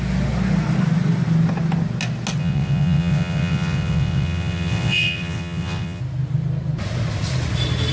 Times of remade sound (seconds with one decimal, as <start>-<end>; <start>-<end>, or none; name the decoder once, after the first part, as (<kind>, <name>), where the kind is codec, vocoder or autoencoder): 2.4-6.0 (vocoder, WaveNeXt)